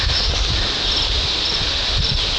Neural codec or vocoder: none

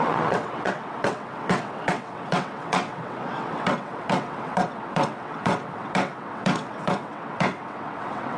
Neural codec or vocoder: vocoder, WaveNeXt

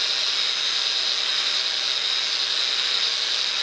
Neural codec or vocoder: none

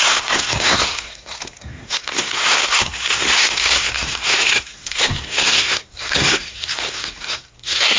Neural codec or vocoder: codec, SNAC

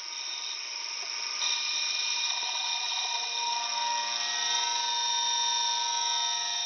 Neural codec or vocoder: none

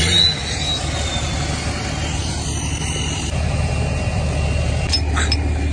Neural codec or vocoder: none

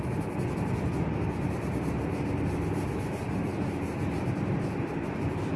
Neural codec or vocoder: none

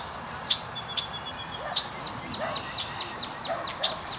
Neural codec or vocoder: none